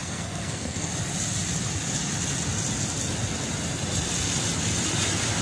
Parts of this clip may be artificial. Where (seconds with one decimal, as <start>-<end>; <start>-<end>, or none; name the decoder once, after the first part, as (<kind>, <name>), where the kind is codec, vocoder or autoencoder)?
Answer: 0.0-0.9 (codec, SNAC)